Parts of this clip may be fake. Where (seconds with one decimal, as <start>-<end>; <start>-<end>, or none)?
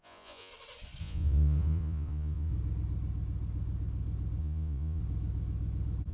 0.0-0.5; 1.0-2.5; 4.4-5.0